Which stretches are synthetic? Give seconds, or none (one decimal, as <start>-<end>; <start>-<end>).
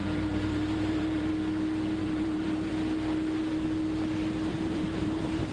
0.0-1.3; 2.0-2.7; 4.5-5.5